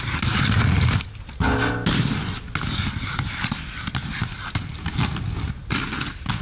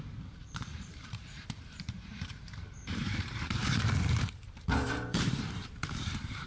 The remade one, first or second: second